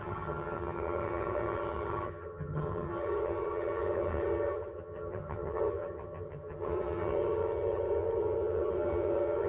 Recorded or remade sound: remade